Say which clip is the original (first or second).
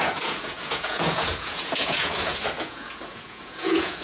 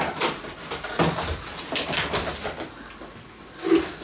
second